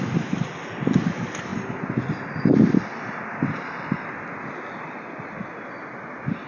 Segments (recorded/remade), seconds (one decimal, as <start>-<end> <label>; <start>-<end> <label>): 0.0-6.5 recorded